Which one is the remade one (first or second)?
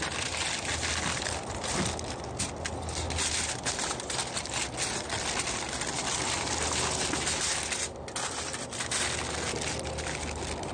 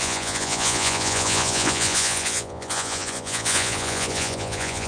second